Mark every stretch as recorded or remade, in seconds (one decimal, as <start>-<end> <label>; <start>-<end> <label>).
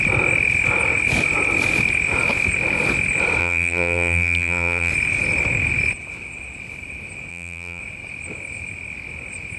0.0-3.4 recorded; 3.4-4.9 remade; 4.9-7.3 recorded; 7.3-7.8 remade; 7.8-9.6 recorded